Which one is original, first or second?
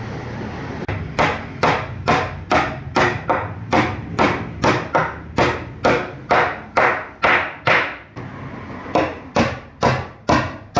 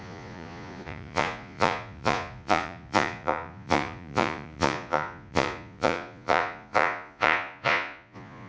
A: first